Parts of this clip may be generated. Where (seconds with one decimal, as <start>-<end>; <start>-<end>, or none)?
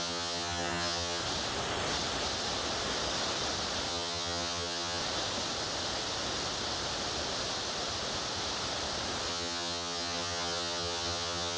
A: 0.0-1.2; 3.9-5.0; 9.3-11.6